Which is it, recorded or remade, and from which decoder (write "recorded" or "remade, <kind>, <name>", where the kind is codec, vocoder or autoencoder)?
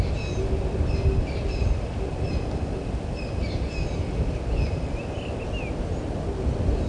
recorded